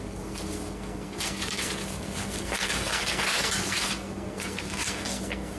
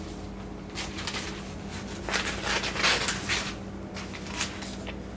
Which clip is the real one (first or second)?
second